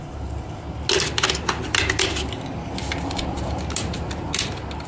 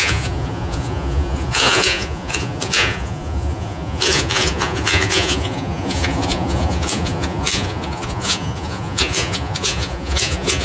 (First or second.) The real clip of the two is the first